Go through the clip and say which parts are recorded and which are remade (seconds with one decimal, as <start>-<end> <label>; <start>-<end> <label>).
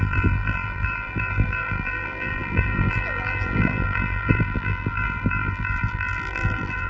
0.0-6.9 remade